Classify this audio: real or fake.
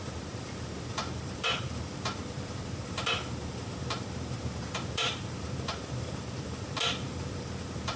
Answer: fake